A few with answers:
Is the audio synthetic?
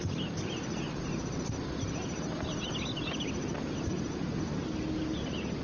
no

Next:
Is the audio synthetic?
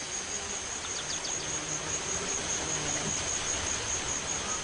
no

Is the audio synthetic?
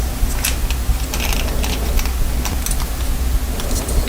no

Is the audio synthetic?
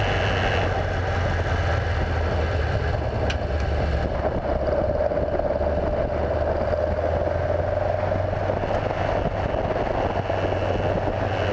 no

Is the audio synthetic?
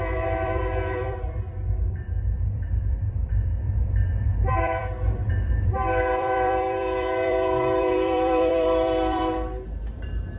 yes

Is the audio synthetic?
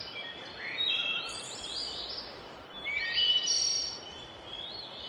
no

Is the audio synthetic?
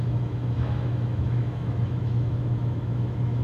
yes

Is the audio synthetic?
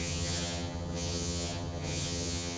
yes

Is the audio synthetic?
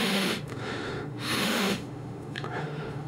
yes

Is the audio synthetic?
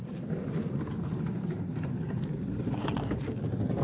no